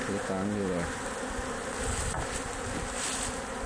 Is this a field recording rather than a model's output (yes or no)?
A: yes